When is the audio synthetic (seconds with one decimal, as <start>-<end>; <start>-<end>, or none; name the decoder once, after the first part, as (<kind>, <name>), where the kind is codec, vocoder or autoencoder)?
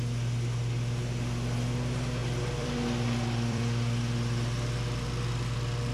2.2-5.9 (vocoder, BigVGAN v2)